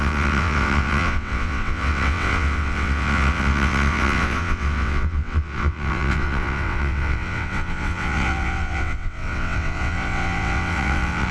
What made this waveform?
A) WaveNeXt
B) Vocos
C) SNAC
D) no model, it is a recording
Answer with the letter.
A